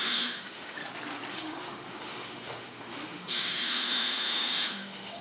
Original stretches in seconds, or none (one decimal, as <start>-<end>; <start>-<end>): 0.8-1.3